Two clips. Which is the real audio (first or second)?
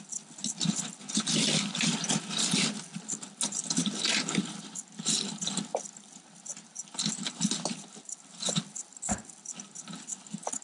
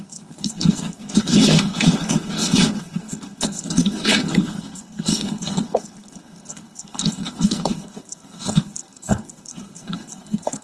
first